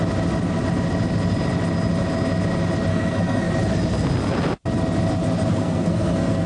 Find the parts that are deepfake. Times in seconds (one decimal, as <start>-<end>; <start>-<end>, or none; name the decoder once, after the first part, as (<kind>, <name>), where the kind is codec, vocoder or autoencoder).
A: 2.9-3.5 (codec, SNAC); 5.5-6.5